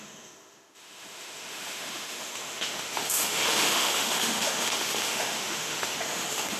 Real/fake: fake